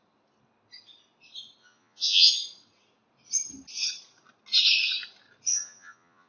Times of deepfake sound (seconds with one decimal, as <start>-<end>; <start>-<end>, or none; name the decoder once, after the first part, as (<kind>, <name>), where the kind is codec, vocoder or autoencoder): 1.6-2.3 (vocoder, Vocos); 5.5-6.3